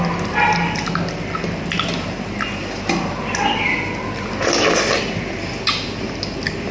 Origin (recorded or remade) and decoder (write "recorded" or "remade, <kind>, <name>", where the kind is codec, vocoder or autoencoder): recorded